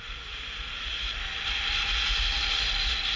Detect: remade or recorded recorded